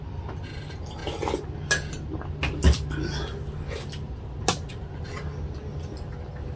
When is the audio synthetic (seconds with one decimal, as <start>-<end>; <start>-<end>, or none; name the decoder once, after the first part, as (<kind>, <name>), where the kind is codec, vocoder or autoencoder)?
none